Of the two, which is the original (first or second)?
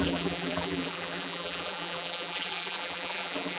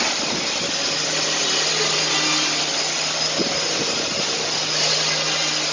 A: second